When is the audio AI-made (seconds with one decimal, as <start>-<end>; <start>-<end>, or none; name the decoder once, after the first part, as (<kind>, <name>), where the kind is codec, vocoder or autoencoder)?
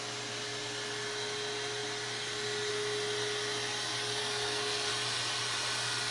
4.2-4.9 (codec, SNAC)